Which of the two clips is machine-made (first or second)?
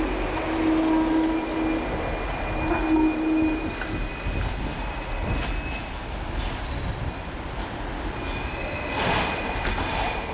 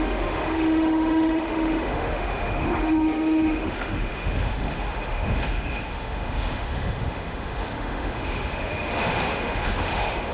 second